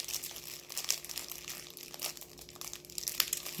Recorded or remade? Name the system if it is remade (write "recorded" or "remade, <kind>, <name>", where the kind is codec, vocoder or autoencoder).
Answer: recorded